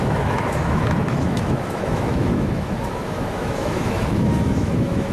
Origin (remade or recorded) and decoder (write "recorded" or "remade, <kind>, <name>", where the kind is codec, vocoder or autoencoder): remade, autoencoder, DAC-VAE